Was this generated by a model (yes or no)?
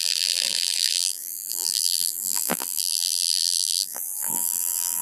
yes